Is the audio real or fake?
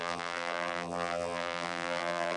fake